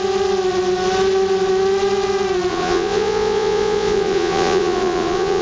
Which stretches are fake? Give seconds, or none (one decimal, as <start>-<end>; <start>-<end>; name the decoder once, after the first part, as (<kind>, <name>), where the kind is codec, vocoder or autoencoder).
2.5-5.4 (vocoder, Vocos)